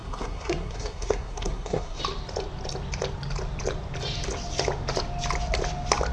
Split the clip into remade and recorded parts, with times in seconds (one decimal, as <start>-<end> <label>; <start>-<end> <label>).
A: 0.0-2.0 remade; 2.0-6.1 recorded